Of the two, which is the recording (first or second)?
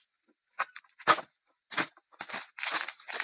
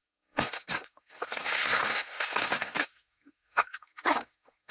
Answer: first